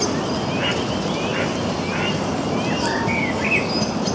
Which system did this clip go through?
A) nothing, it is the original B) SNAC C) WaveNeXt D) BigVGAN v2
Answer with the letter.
A